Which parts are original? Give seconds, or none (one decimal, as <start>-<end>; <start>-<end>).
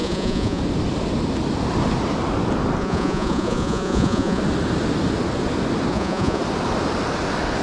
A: 0.6-2.8; 4.4-5.9; 6.4-7.6